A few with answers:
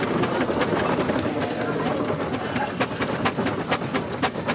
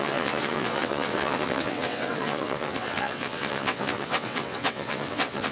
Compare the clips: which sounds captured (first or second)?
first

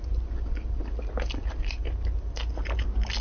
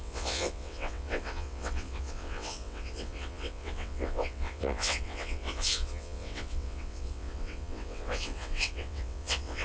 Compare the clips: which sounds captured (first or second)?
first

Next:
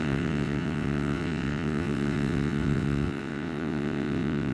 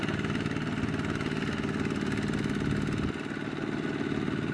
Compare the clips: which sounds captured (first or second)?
second